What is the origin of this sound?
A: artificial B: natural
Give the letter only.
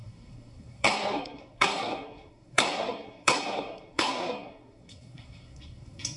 A